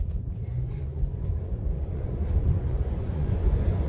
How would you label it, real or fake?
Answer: fake